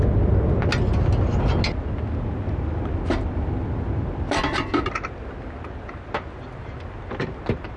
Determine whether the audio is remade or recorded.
recorded